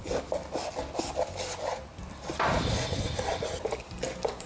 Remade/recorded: recorded